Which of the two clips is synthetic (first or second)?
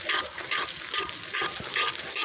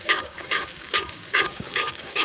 second